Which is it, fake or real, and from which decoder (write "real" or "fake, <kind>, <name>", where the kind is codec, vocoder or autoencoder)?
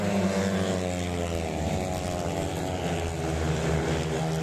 real